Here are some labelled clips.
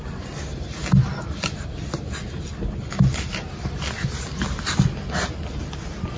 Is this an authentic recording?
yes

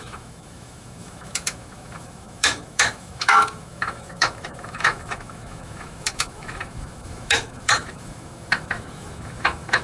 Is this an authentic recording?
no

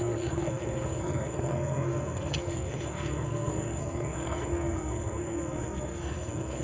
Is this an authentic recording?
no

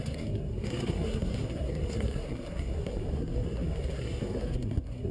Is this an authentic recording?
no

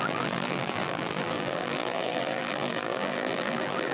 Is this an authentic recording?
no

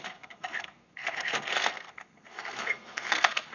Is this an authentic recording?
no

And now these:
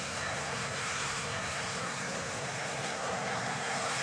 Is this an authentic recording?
no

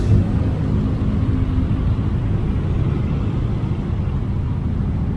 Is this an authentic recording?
yes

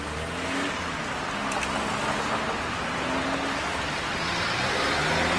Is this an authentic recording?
yes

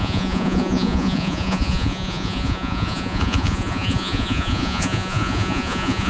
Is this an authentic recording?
no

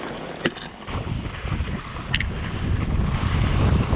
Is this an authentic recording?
yes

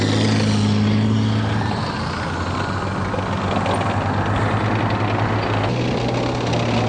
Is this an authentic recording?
yes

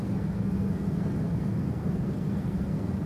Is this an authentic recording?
no